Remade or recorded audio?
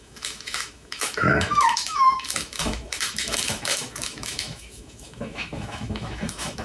remade